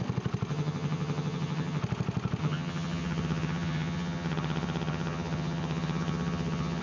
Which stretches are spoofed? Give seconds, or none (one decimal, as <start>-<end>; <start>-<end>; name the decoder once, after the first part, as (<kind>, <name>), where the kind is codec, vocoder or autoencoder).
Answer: 0.5-1.8 (vocoder, HiFi-GAN); 2.4-6.8